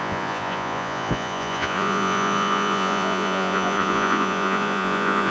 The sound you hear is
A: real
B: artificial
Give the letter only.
B